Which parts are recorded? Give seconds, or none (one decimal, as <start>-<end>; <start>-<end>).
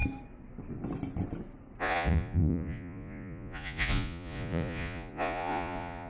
0.0-1.8